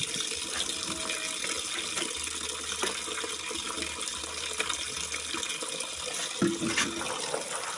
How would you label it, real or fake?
real